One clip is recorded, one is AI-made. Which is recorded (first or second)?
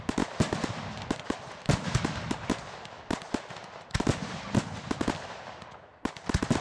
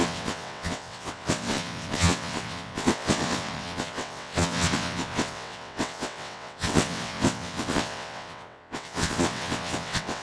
first